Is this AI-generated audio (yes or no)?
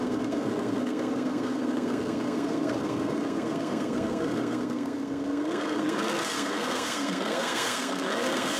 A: yes